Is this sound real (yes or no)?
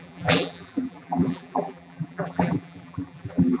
no